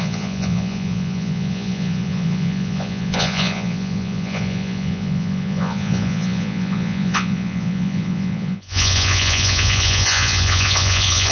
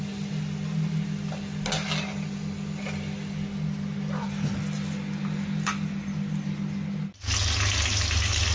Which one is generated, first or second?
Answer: first